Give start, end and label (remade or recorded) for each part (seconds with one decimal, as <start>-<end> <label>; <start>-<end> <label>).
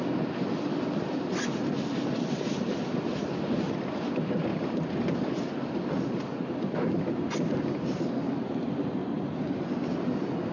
0.0-4.5 recorded; 4.5-5.1 remade; 5.1-9.0 recorded; 9.0-10.1 remade; 10.1-10.5 recorded